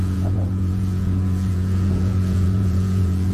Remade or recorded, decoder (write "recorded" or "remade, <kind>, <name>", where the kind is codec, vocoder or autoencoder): remade, vocoder, Vocos